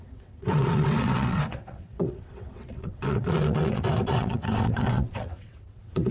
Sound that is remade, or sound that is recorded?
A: remade